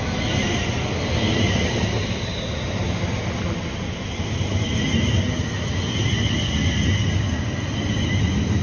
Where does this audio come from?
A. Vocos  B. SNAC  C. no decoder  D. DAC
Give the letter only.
C